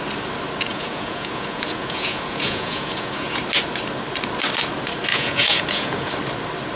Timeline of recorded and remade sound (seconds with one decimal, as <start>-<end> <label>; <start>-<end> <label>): 0.0-0.7 recorded; 0.7-3.4 remade; 3.4-5.1 recorded; 5.1-6.1 remade; 6.1-6.8 recorded